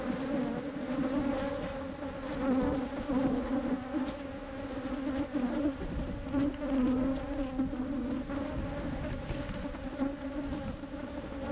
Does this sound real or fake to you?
real